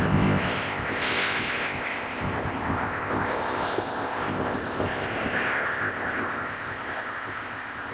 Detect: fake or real fake